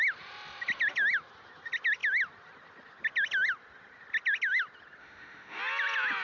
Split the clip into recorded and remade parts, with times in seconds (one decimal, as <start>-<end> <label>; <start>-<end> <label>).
0.0-5.0 recorded; 5.0-5.6 remade; 5.6-6.2 recorded